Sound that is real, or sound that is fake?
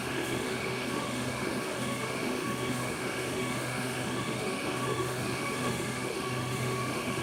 fake